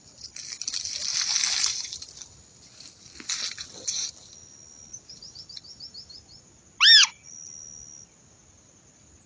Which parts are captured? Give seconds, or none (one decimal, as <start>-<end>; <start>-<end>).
0.0-1.1; 1.9-9.3